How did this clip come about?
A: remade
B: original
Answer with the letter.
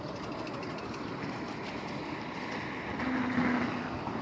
B